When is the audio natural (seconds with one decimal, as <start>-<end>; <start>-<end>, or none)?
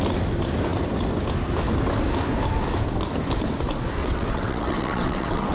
0.0-4.0